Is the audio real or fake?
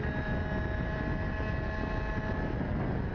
real